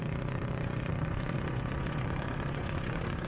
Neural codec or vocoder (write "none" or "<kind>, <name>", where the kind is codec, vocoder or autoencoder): vocoder, Vocos